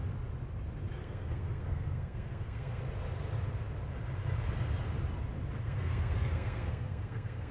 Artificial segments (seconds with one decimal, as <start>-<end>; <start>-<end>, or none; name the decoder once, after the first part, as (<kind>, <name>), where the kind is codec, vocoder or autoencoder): 1.0-2.8 (codec, SNAC); 5.6-7.5